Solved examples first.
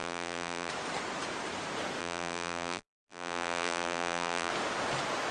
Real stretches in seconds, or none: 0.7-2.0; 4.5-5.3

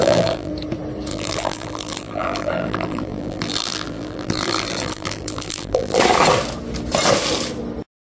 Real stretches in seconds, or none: 0.5-1.1; 6.0-8.1